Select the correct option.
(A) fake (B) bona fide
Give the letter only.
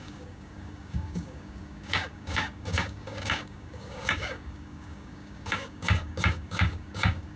A